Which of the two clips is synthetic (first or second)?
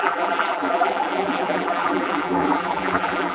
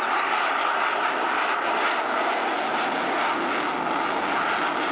first